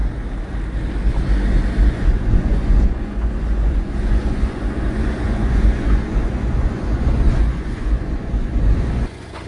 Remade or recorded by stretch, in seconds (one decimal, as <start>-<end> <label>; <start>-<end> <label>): 0.0-1.9 recorded; 1.9-9.5 remade